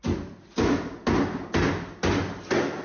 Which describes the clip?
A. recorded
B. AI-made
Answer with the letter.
A